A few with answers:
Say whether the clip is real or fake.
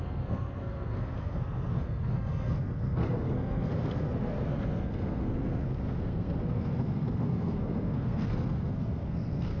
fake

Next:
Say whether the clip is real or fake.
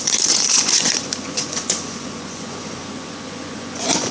fake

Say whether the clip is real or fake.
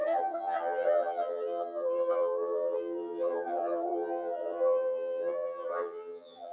fake